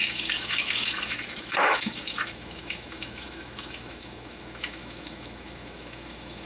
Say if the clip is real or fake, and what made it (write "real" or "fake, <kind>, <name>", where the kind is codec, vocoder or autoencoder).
fake, autoencoder, DAC-VAE